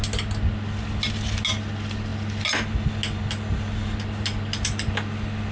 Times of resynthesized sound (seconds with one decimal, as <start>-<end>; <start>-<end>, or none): none